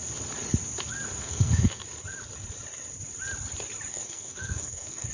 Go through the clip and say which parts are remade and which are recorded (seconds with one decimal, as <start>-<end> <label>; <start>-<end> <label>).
0.0-1.2 recorded; 1.2-1.8 remade; 1.8-3.9 recorded; 3.9-5.1 remade